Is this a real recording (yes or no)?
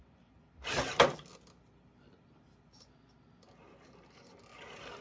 yes